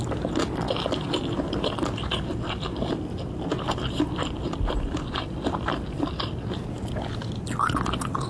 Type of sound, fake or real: real